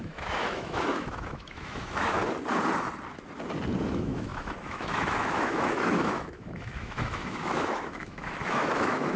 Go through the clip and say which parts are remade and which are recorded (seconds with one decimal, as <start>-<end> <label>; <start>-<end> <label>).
0.0-2.2 remade; 2.2-3.9 recorded; 3.9-9.2 remade